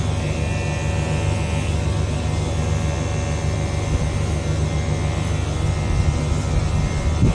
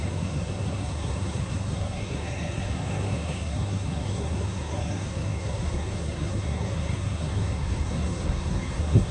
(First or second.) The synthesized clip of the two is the second